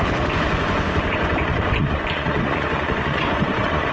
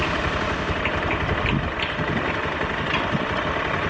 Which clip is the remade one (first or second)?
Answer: first